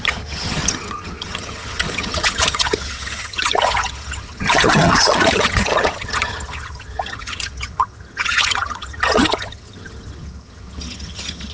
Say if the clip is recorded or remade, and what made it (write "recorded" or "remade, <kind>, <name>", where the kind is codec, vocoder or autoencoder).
remade, vocoder, HiFi-GAN